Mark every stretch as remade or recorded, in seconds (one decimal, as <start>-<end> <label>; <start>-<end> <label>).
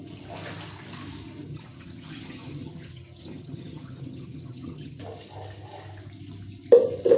0.0-1.5 recorded; 1.5-5.0 remade; 5.0-7.2 recorded